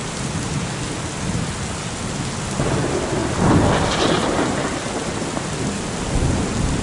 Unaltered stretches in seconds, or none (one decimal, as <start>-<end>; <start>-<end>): 0.0-6.8